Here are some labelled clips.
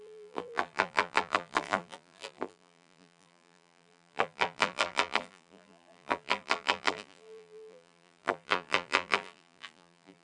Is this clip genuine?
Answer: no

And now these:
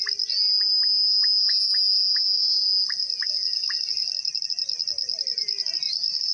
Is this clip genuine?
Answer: yes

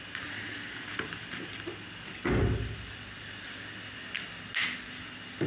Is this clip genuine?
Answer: yes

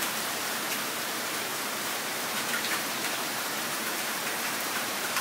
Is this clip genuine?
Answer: no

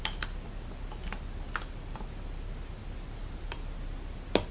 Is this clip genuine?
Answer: yes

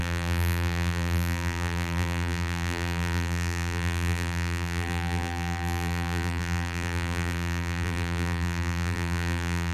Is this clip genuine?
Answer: no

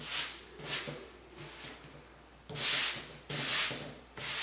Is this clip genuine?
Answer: yes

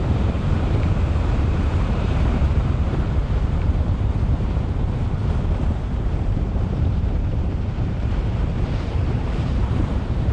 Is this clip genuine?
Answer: no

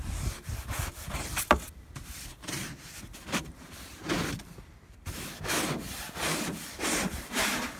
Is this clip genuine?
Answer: no